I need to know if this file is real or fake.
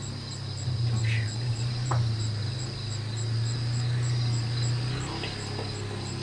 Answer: real